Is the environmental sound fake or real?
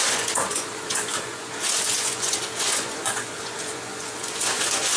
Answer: fake